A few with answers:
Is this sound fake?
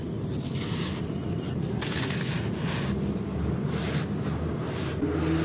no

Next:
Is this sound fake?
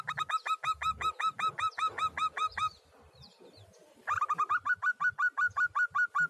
no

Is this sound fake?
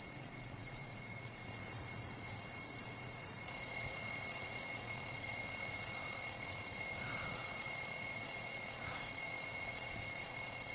yes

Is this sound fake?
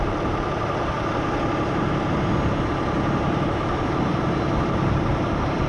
no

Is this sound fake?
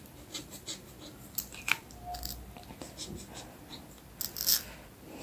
no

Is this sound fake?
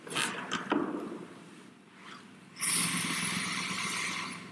no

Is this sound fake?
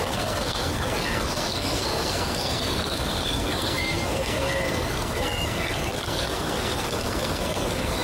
yes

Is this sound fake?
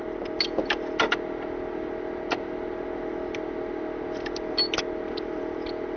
no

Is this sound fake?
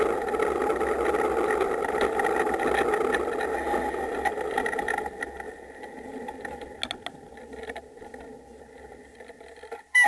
no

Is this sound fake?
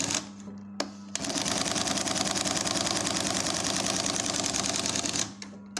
no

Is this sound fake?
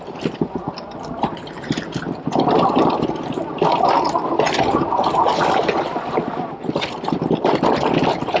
no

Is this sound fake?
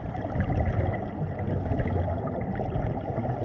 no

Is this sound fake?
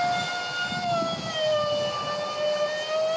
no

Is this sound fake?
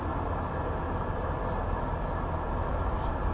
no